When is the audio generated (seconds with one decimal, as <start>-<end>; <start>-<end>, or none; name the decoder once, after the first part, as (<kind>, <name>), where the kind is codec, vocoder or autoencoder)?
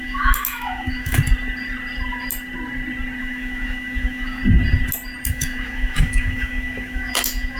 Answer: 0.0-1.2 (autoencoder, DAC-VAE); 3.2-4.4; 5.3-7.6